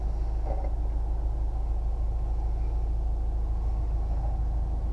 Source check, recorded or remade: recorded